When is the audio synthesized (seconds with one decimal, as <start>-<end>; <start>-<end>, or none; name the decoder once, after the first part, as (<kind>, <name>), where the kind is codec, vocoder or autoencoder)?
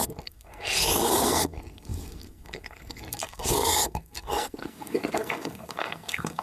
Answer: 0.0-6.4 (codec, SNAC)